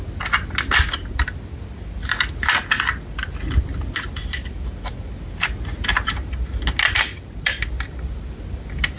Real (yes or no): yes